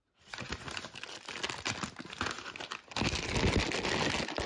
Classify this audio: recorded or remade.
recorded